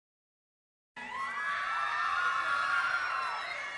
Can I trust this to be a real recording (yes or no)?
yes